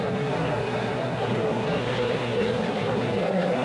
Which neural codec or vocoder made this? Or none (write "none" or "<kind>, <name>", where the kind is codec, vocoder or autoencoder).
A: codec, SNAC